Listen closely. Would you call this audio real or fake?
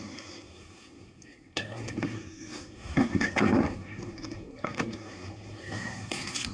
fake